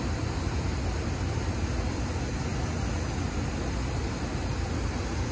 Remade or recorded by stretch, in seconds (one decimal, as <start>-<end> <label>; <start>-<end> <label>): 0.0-5.3 recorded